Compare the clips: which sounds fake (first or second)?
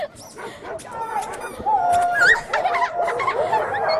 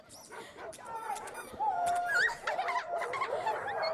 second